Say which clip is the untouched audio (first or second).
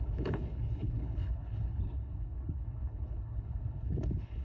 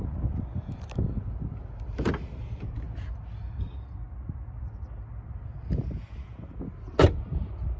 second